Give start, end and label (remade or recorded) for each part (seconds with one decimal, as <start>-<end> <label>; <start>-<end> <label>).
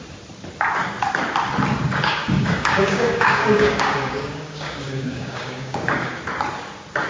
0.0-1.9 recorded; 1.9-6.2 remade; 6.2-7.1 recorded